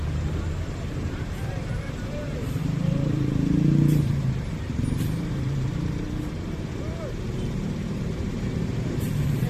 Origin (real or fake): fake